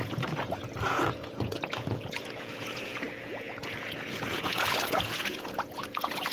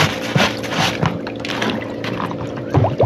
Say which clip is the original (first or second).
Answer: second